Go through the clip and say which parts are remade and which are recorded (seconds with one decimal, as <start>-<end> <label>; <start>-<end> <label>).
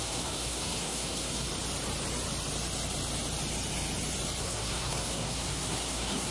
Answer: 0.0-1.5 remade; 1.5-4.4 recorded; 4.4-6.3 remade